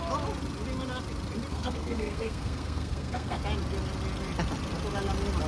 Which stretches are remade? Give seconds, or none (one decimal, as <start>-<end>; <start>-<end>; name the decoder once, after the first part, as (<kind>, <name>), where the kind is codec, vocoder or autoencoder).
1.5-3.4 (codec, SNAC)